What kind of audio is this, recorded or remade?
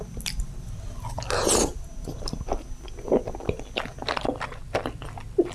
recorded